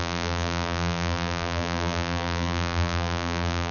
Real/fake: fake